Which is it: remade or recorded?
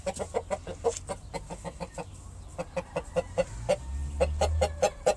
recorded